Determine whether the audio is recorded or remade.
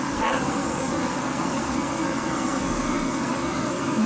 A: remade